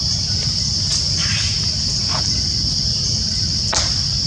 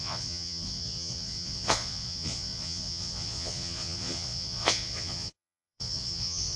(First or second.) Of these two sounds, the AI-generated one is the second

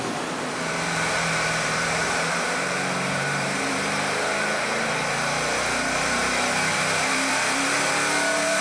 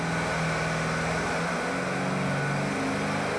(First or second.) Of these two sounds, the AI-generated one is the first